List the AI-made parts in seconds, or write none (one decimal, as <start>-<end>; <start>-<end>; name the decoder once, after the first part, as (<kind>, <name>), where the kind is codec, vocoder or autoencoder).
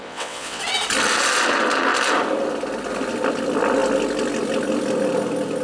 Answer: 0.0-0.6 (vocoder, WaveNeXt)